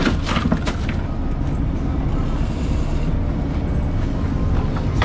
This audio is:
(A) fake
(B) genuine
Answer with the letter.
B